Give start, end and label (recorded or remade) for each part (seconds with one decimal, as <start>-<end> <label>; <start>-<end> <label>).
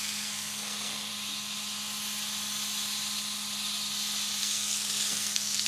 0.0-1.1 remade; 1.1-4.4 recorded; 4.4-5.7 remade